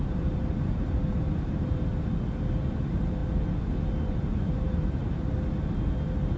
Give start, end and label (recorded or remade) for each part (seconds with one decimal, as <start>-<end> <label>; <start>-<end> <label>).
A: 0.0-1.9 remade; 1.9-2.7 recorded; 2.7-3.2 remade; 3.2-4.3 recorded; 4.3-5.0 remade; 5.0-6.4 recorded